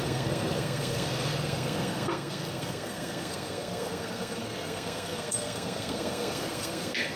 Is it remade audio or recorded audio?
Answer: remade